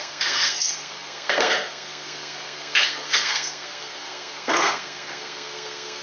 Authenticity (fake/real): fake